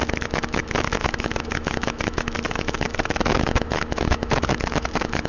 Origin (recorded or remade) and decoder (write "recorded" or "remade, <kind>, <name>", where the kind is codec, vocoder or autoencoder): remade, autoencoder, DAC-VAE